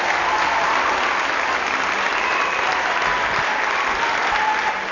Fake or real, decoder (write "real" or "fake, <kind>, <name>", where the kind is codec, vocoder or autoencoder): real